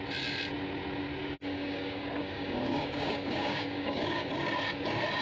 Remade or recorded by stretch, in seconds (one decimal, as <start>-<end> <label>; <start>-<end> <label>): 0.0-1.2 recorded; 1.2-4.3 remade; 4.3-5.2 recorded